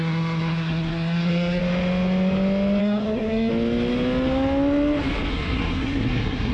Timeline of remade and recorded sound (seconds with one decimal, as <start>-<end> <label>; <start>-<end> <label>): 0.0-1.6 remade; 1.6-2.8 recorded; 2.8-3.5 remade; 3.5-5.3 recorded; 5.3-6.5 remade